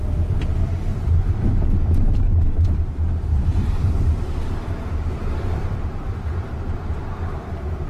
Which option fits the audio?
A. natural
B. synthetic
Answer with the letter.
B